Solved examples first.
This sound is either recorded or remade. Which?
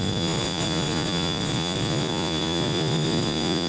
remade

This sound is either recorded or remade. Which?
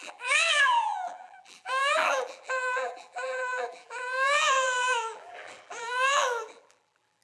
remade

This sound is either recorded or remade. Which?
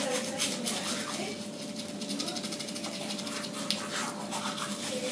recorded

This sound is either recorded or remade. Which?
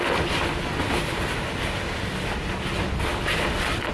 recorded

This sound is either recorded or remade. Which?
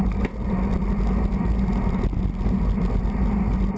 recorded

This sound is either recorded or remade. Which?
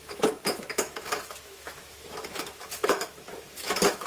remade